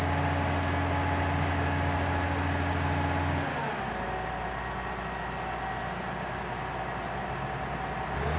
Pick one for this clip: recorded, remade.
recorded